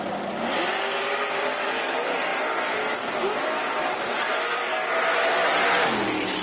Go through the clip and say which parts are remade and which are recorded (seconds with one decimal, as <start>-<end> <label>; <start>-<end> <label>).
0.0-6.4 recorded